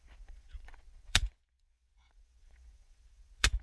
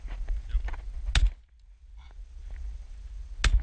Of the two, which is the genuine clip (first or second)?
second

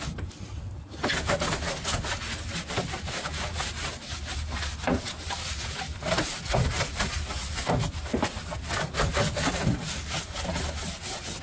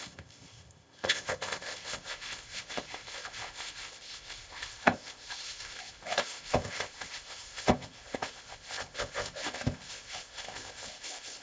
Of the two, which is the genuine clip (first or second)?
first